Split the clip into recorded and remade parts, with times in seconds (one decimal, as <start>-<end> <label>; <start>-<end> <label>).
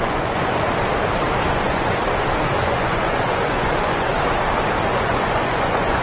0.0-0.7 remade; 0.7-1.5 recorded; 1.5-2.0 remade; 2.0-2.6 recorded; 2.6-4.1 remade; 4.1-4.9 recorded; 4.9-6.0 remade